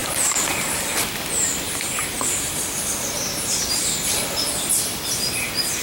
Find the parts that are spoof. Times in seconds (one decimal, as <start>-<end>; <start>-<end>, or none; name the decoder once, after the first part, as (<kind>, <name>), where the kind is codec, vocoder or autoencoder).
0.0-0.8 (vocoder, BigVGAN v2); 2.0-3.8